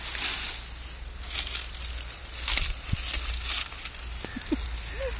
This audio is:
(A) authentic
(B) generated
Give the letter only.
A